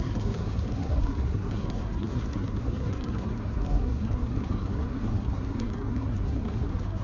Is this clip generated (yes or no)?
yes